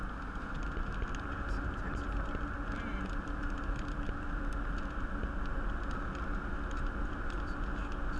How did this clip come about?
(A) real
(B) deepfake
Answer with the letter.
A